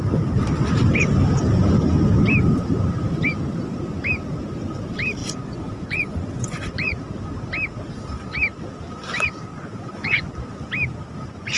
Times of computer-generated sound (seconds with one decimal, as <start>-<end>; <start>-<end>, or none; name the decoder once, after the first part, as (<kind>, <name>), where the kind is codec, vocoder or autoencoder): 5.2-7.0 (vocoder, Vocos); 9.5-10.3